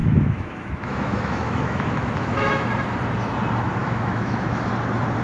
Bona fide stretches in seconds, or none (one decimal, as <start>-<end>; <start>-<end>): 2.7-3.8; 4.7-5.2